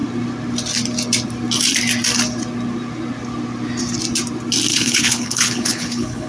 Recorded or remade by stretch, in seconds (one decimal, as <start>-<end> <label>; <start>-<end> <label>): 0.0-4.7 recorded; 4.7-6.3 remade